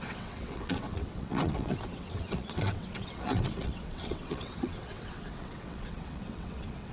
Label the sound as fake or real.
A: fake